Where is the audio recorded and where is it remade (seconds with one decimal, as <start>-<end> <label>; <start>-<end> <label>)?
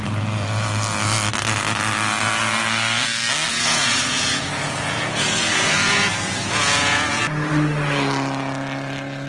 0.0-3.5 recorded; 3.5-7.2 remade; 7.2-9.3 recorded